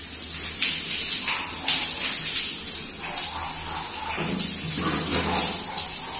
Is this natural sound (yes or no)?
yes